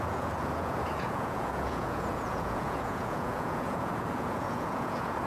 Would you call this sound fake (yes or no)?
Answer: yes